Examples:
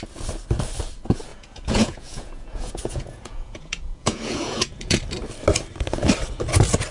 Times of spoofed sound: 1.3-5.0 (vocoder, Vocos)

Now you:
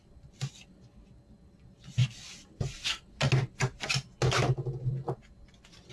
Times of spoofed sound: none

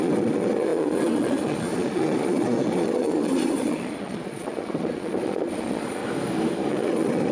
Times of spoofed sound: 0.0-6.0 (vocoder, Vocos); 6.7-7.3

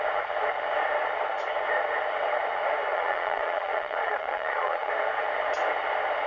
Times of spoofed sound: 2.9-4.9 (vocoder, Vocos)